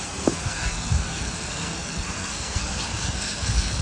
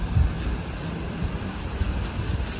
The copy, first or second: first